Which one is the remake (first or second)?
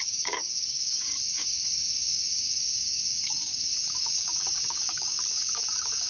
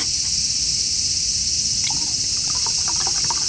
first